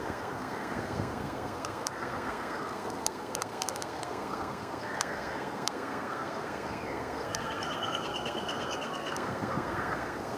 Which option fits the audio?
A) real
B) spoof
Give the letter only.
B